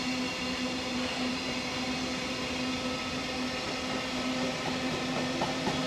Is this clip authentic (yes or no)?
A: yes